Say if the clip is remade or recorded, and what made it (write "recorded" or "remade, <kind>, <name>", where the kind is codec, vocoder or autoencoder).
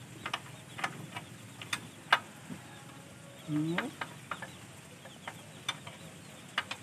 recorded